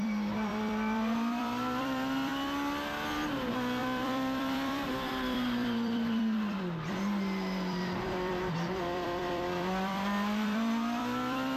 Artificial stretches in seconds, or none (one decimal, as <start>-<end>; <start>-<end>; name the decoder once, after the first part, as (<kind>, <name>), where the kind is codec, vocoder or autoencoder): 0.0-2.3 (vocoder, BigVGAN v2); 3.8-11.6